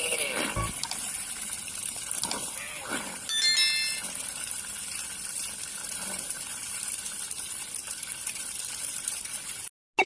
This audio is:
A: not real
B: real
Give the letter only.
B